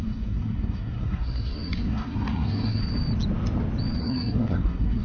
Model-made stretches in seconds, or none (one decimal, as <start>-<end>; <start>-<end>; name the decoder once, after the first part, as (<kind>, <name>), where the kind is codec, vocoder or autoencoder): 0.0-2.8 (codec, SNAC); 4.0-5.0